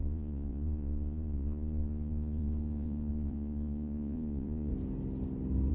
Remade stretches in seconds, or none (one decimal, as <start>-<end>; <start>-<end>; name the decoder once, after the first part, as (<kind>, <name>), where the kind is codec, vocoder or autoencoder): 0.0-4.7 (vocoder, Vocos)